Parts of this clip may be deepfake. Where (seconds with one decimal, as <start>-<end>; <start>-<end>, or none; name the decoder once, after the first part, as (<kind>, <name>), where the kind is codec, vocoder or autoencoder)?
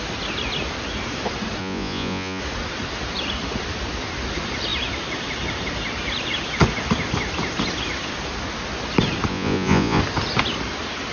1.6-2.4 (vocoder, Vocos); 9.3-10.0